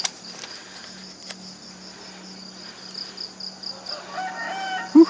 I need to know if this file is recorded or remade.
recorded